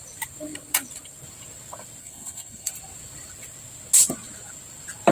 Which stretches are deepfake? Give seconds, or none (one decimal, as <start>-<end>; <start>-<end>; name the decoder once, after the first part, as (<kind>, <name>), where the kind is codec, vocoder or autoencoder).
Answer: 2.0-2.7 (codec, SNAC)